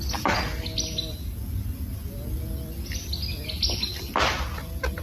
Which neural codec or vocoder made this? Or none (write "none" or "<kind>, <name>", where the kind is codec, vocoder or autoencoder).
none